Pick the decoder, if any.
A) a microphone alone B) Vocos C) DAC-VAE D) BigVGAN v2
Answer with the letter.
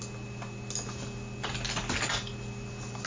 A